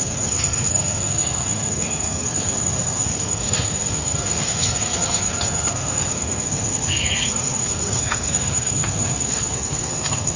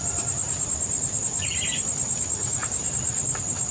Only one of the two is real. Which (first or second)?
second